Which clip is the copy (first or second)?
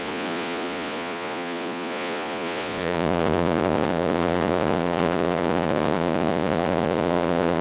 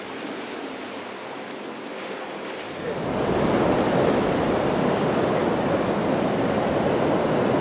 first